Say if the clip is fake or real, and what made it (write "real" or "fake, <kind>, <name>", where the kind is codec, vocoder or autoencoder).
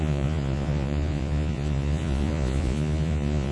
fake, vocoder, Vocos